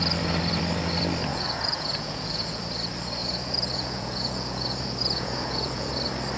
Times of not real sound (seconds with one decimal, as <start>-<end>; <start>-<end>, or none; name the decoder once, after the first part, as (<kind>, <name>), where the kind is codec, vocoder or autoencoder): 1.3-2.6 (vocoder, Vocos); 3.2-5.9

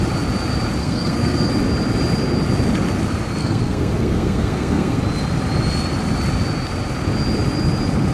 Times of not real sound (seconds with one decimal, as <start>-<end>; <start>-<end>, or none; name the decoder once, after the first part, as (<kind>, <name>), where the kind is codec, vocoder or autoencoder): 0.8-1.5 (codec, SNAC); 3.4-5.0

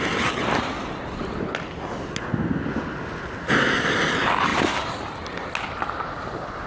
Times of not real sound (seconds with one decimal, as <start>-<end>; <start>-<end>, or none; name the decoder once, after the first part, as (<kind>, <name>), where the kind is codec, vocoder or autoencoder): none

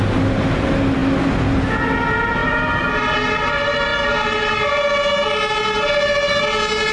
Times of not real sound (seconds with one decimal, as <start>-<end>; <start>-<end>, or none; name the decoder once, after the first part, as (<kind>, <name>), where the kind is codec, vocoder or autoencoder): none

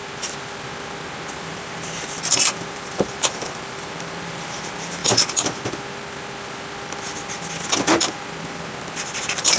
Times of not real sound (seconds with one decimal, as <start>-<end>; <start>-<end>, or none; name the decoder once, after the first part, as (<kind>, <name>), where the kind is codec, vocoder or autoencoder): 1.3-5.0 (vocoder, BigVGAN v2); 9.2-9.6

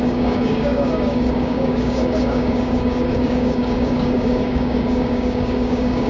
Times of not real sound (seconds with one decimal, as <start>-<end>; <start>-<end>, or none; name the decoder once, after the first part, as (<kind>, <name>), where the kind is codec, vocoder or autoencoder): 0.0-6.1 (codec, DAC)

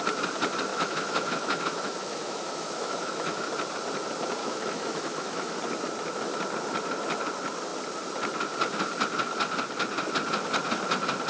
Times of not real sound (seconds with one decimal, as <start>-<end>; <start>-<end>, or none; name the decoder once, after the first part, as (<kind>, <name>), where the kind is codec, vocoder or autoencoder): 0.7-3.5 (autoencoder, DAC-VAE); 4.4-5.6